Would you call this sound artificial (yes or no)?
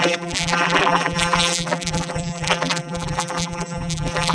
yes